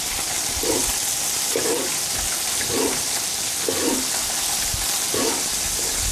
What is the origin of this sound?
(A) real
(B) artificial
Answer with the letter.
A